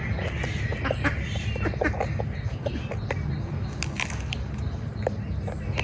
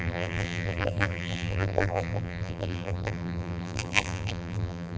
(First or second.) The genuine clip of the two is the first